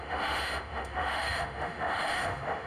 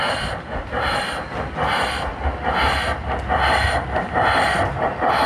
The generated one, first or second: first